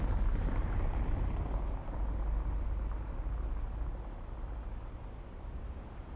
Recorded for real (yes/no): yes